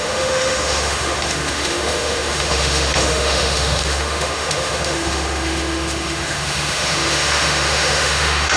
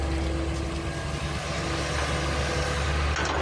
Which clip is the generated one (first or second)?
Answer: first